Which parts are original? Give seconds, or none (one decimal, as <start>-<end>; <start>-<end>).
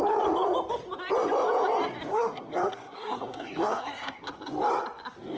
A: 0.0-2.1; 4.5-5.4